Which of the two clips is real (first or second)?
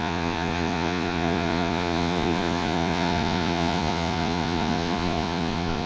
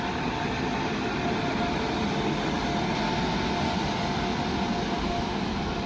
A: second